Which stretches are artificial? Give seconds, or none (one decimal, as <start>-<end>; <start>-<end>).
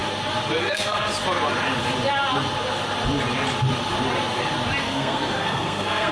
0.6-1.1; 4.8-6.1